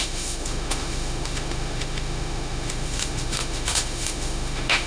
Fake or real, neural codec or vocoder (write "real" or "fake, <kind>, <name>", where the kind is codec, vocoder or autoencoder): fake, autoencoder, DAC-VAE